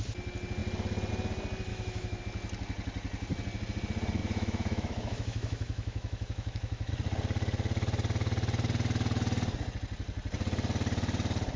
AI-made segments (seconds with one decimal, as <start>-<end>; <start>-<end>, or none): 1.7-2.2; 4.2-6.9